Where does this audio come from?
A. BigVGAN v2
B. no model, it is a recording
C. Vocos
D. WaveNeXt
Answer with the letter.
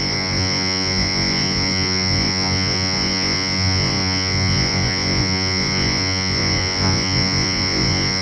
C